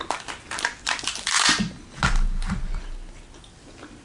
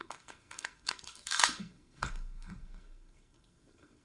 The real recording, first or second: first